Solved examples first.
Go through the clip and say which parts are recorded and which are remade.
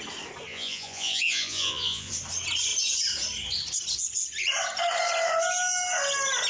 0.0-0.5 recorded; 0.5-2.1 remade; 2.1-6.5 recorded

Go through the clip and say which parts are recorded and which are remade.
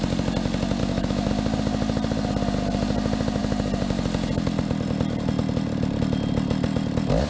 0.0-0.8 recorded; 0.8-1.3 remade; 1.3-7.3 recorded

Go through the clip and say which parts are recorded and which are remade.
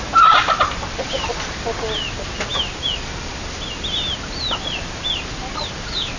0.0-6.2 recorded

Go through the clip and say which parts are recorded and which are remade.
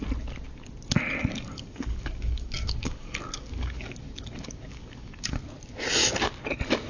0.0-1.3 recorded; 1.3-5.4 remade; 5.4-6.9 recorded